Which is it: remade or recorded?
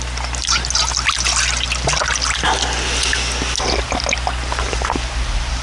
recorded